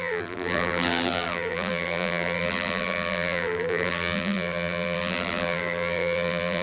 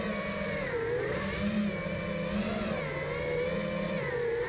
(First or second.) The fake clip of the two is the first